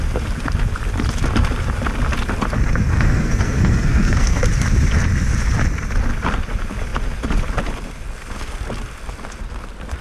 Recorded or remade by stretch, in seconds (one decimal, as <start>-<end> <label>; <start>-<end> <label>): 0.0-2.9 recorded; 2.9-4.4 remade; 4.4-10.0 recorded